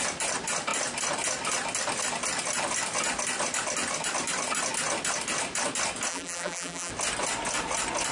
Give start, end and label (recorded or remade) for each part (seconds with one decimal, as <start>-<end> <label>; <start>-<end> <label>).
0.0-6.1 recorded; 6.1-6.9 remade; 6.9-8.1 recorded